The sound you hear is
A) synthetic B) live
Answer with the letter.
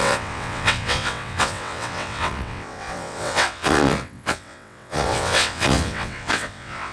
A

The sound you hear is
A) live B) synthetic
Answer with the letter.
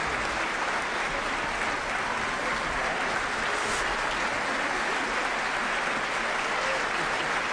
A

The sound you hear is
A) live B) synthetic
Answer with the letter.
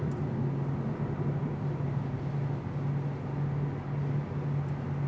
A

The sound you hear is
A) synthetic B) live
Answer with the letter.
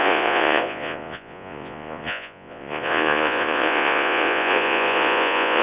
A